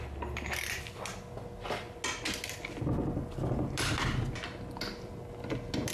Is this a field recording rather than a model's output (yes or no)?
yes